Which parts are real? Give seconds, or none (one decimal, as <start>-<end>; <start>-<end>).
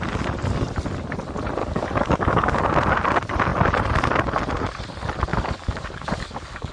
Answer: 0.0-1.6; 2.6-5.3